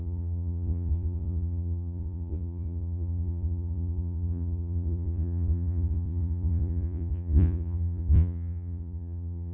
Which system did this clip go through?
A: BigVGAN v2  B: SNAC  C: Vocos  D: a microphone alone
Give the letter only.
C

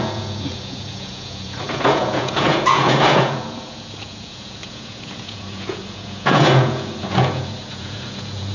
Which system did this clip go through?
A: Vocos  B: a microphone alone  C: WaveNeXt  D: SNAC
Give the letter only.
A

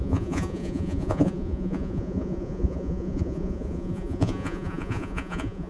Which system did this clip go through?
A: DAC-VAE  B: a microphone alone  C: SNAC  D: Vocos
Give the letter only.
D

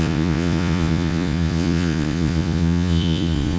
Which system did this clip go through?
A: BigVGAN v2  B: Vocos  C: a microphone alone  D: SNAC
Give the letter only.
B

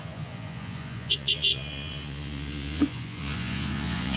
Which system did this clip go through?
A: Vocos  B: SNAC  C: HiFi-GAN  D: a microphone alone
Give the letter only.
A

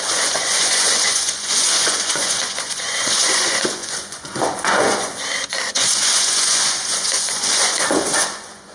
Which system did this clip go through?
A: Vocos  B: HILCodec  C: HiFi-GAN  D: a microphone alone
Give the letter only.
A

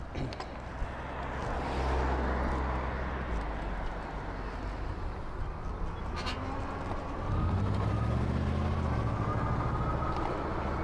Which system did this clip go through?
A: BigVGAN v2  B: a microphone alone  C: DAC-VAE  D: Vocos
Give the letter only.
B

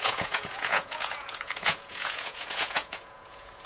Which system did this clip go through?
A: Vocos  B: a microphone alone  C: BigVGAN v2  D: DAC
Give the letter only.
A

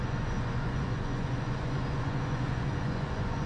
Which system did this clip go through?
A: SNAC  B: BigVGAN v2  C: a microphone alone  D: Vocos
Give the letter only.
D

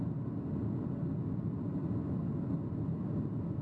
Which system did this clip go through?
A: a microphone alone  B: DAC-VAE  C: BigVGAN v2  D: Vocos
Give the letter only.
A